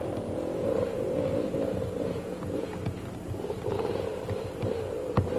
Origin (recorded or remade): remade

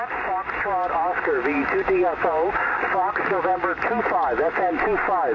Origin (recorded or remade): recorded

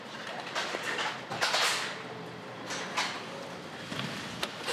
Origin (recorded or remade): recorded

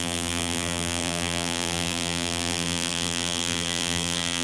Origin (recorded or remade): remade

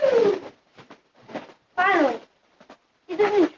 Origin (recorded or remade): recorded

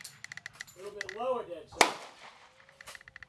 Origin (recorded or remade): recorded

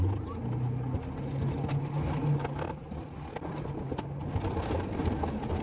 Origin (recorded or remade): recorded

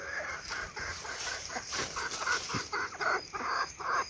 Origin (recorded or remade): remade